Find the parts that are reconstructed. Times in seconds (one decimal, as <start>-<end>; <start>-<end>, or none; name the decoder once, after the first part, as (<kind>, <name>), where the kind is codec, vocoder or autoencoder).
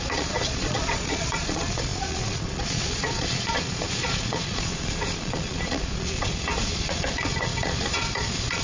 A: 0.0-8.6 (vocoder, Vocos)